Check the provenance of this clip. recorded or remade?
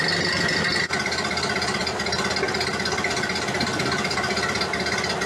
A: recorded